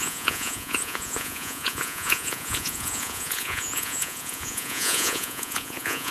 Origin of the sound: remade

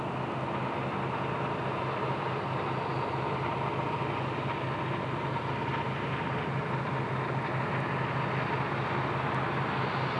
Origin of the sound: recorded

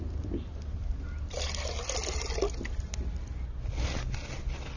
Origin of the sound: recorded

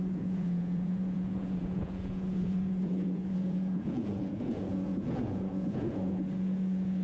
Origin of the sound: remade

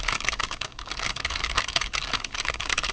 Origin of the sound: remade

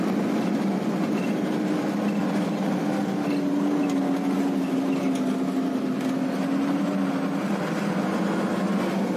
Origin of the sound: recorded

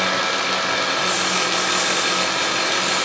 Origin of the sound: recorded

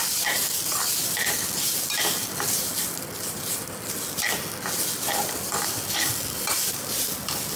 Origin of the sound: recorded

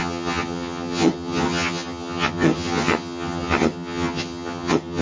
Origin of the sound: remade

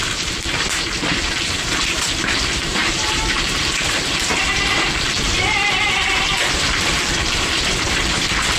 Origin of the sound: remade